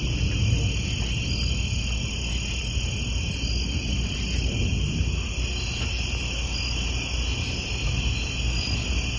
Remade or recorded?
recorded